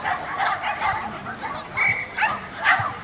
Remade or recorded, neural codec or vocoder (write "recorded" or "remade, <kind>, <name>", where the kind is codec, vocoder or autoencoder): recorded